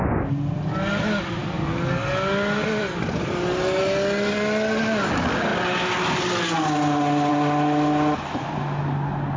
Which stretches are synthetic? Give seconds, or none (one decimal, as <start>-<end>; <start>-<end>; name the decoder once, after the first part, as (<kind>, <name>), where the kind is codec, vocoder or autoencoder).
none